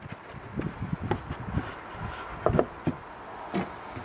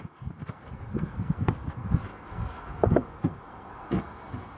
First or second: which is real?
first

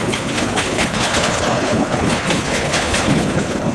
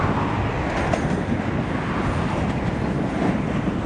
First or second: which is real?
second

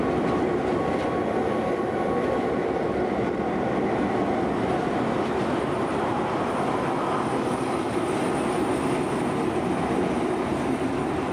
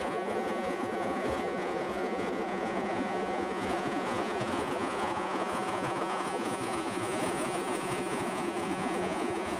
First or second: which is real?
first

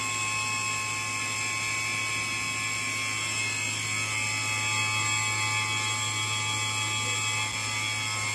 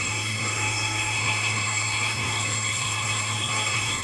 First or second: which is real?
first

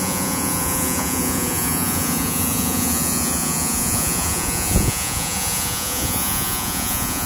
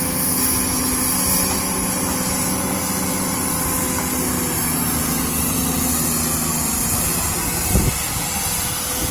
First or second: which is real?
second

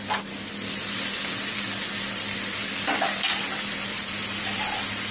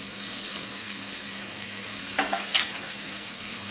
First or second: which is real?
first